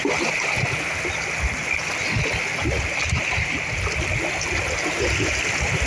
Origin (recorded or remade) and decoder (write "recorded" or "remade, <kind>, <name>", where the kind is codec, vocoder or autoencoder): recorded